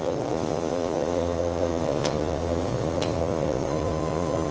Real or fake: fake